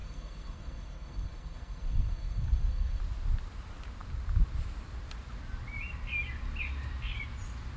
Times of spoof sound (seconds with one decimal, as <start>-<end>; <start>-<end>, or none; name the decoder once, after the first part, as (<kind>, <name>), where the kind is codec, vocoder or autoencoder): 0.0-3.0 (codec, SNAC)